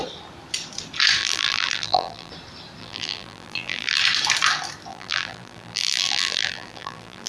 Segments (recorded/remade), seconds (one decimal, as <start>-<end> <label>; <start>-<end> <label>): 0.0-1.2 recorded; 1.2-2.3 remade; 2.3-2.8 recorded; 2.8-4.0 remade; 4.0-4.9 recorded; 4.9-7.3 remade